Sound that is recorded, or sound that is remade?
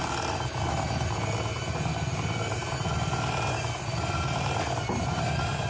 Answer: remade